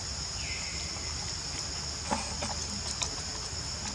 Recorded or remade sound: recorded